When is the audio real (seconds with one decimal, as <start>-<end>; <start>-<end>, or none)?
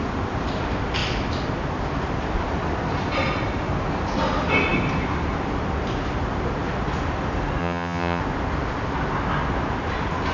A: 0.0-7.6; 8.2-10.3